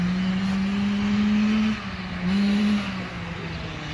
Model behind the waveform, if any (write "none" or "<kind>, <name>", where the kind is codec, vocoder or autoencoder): none